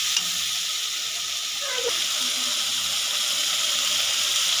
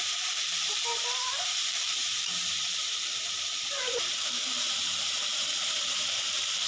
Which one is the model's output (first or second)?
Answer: second